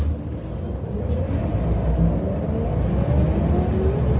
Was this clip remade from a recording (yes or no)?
no